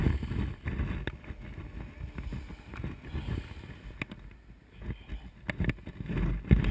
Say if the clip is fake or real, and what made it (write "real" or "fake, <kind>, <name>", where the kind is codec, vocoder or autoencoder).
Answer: real